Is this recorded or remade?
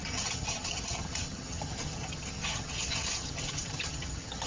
remade